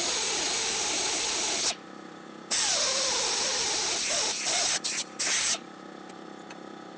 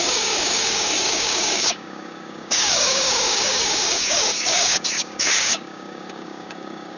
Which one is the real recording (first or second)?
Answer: first